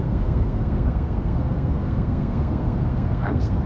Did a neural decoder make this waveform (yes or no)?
yes